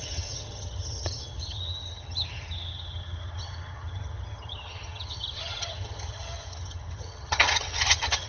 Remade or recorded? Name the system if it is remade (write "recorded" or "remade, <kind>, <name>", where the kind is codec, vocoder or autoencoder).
remade, vocoder, HiFi-GAN